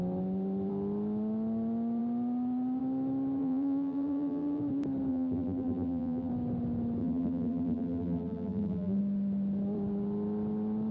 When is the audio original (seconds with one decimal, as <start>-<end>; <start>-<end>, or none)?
0.0-3.4; 4.6-5.1; 6.3-7.0; 9.0-10.9